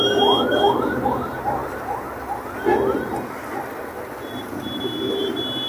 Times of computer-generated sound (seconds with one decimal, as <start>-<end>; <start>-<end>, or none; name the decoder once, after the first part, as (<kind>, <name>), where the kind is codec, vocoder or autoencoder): none